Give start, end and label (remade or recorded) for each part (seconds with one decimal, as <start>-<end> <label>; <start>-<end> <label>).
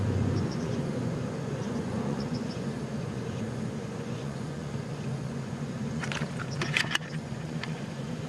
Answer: 0.0-8.3 remade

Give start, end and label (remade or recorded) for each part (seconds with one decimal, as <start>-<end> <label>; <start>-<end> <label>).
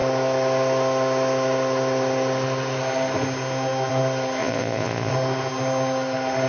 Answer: 0.0-4.4 recorded; 4.4-5.1 remade; 5.1-6.5 recorded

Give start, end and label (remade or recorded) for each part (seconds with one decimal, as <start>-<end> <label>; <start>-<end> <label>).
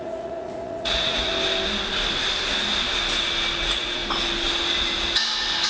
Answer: 0.0-1.3 remade; 1.3-3.6 recorded; 3.6-4.0 remade; 4.0-5.7 recorded